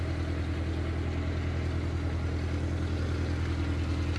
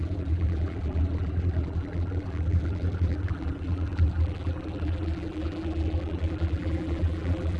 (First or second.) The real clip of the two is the first